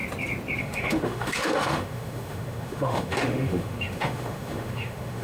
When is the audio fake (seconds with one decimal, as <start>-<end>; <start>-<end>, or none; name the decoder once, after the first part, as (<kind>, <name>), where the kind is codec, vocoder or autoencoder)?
0.6-5.2 (autoencoder, DAC-VAE)